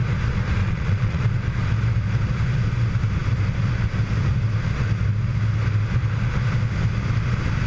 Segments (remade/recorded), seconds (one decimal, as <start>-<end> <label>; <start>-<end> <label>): 0.0-0.6 recorded; 0.6-1.2 remade; 1.2-7.7 recorded